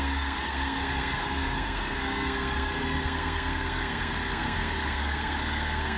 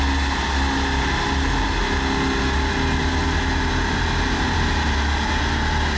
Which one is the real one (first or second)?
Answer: second